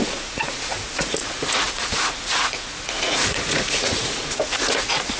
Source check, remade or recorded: remade